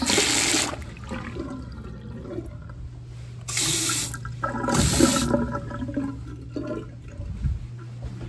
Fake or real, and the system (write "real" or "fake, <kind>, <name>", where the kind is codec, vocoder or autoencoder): real